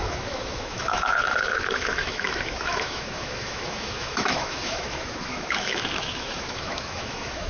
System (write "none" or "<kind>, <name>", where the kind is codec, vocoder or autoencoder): autoencoder, DAC-VAE